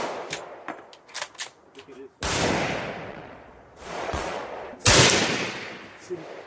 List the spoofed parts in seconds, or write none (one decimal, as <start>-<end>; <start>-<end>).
3.1-4.7